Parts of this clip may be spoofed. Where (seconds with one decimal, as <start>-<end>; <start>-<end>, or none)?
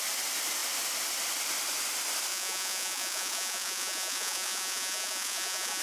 2.3-5.8